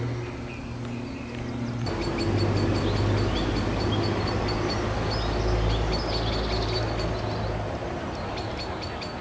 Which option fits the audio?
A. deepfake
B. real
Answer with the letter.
B